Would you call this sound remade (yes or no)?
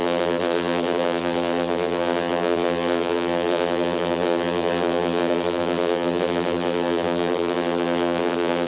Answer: yes